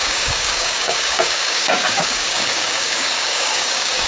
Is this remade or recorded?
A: remade